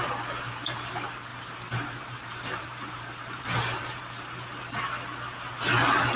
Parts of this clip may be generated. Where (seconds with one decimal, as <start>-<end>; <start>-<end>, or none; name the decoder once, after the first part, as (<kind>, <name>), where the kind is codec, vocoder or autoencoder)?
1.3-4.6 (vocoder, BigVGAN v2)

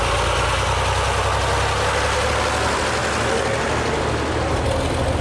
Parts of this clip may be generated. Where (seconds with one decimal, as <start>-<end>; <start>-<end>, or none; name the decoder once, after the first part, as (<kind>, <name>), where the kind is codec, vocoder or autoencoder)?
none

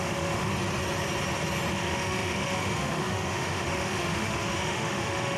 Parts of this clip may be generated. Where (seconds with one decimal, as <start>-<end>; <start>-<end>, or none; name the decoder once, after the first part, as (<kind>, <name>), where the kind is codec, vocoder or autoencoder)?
0.0-0.5 (autoencoder, DAC-VAE); 1.7-5.4